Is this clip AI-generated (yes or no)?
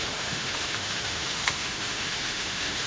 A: yes